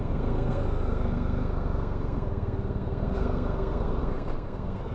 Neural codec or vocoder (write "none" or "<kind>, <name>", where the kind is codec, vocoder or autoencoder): codec, SNAC